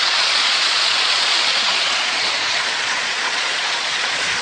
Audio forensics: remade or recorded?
remade